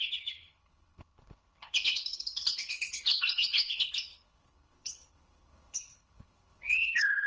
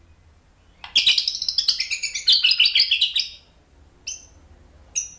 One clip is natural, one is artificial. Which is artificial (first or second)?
first